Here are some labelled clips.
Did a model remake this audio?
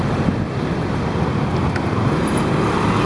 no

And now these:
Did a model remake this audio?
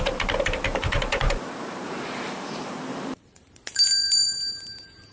yes